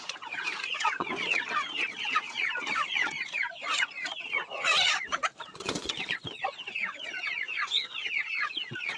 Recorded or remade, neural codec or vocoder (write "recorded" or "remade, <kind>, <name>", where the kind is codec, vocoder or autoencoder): remade, vocoder, Vocos